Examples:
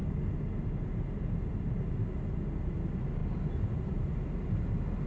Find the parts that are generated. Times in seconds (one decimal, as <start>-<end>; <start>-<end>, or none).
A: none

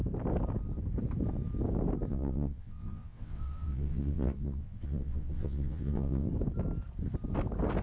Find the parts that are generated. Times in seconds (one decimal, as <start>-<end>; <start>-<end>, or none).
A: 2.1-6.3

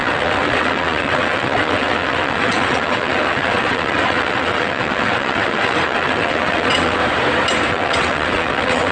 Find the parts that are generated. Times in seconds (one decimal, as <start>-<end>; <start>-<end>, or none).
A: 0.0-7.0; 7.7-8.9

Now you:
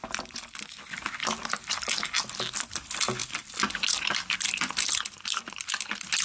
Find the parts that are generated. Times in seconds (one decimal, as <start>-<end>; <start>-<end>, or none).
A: none

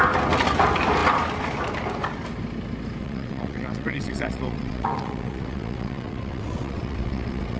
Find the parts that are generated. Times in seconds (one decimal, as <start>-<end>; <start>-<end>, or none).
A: 3.0-7.6

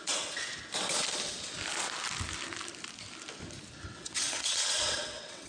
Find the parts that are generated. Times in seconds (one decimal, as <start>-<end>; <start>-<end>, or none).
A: 0.0-0.5; 3.8-5.5

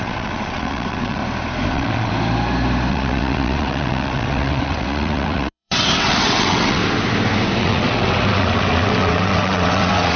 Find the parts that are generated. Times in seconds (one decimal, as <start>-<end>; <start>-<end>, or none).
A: 0.0-1.2; 1.7-2.1; 2.9-6.8; 7.6-10.2

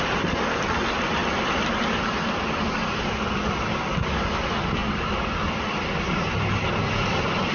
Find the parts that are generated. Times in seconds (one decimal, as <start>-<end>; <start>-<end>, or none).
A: none